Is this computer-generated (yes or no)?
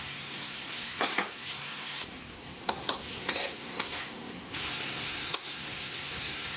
yes